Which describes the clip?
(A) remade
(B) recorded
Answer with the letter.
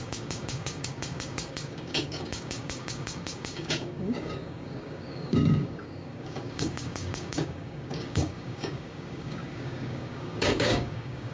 A